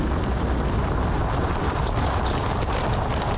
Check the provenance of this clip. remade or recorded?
recorded